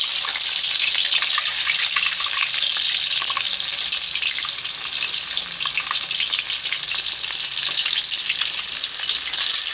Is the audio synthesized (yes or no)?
no